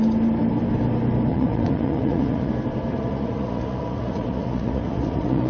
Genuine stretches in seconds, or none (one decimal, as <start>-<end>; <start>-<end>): 0.0-1.3; 2.5-2.9